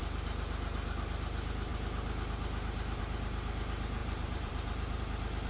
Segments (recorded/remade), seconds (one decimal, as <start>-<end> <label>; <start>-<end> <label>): 0.0-4.0 recorded; 4.0-5.0 remade; 5.0-5.5 recorded